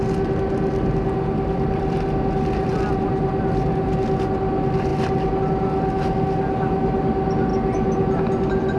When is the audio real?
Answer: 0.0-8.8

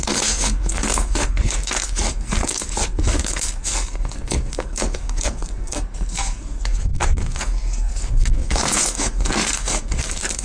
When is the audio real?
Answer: none

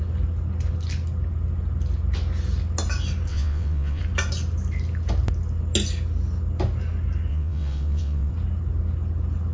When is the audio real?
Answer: 0.0-3.3; 4.0-7.3; 8.3-9.5

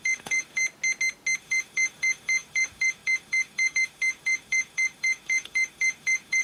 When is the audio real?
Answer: 0.6-1.4

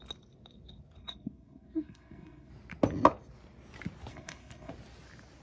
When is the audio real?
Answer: 0.0-1.0; 2.5-4.1; 4.7-5.4